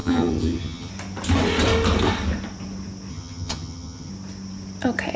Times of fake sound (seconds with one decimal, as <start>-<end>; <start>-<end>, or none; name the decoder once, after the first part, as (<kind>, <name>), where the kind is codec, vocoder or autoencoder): 0.0-0.9 (vocoder, HiFi-GAN); 3.1-4.1